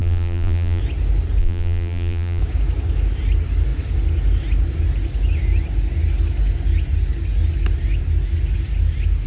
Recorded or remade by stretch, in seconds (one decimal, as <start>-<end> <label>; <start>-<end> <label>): 0.0-0.8 remade; 0.8-1.4 recorded; 1.4-2.4 remade; 2.4-9.3 recorded